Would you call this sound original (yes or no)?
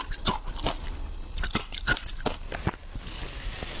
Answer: yes